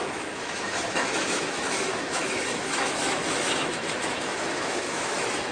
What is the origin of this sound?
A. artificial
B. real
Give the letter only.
A